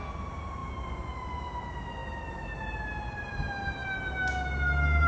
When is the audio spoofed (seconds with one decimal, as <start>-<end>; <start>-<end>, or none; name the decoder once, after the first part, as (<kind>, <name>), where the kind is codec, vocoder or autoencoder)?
none